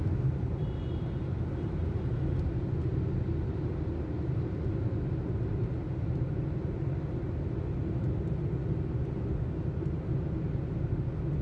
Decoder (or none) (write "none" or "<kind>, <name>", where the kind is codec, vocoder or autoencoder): none